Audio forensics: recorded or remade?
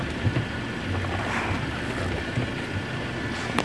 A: recorded